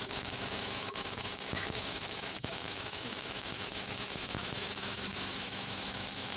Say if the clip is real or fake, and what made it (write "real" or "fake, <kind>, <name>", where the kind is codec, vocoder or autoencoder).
fake, autoencoder, DAC-VAE